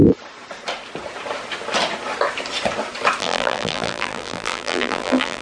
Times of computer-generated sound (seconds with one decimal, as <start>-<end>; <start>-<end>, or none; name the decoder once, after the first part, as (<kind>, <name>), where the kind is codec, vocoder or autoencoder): 3.2-5.4 (vocoder, BigVGAN v2)